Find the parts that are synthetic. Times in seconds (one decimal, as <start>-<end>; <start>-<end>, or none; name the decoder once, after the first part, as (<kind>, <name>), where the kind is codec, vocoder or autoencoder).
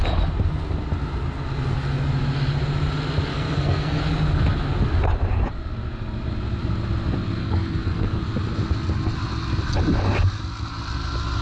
3.3-4.0 (codec, SNAC); 7.4-8.2